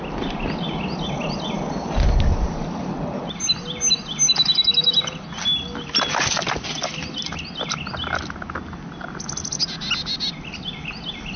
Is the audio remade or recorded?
recorded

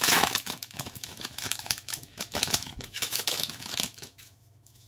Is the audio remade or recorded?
remade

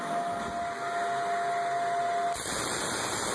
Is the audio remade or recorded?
recorded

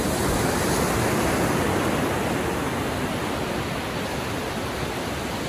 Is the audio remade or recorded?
recorded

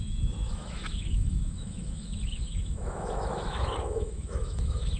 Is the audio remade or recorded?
remade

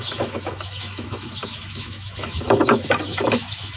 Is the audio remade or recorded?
remade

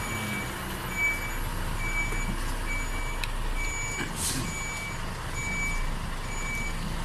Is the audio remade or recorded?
recorded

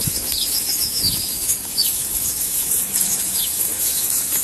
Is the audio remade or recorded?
remade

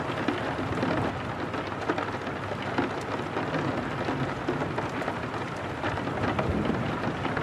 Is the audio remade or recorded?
recorded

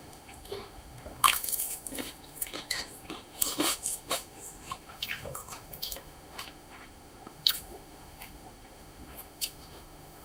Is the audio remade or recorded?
remade